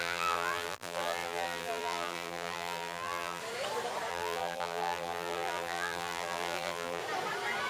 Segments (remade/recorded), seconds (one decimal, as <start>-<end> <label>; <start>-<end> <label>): 0.0-3.4 remade; 3.4-4.1 recorded; 4.1-7.0 remade; 7.0-7.7 recorded